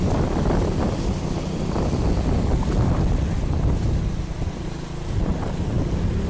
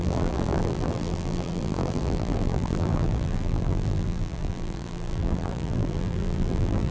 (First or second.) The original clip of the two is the first